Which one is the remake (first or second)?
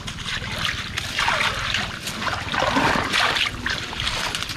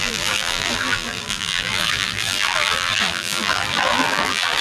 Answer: second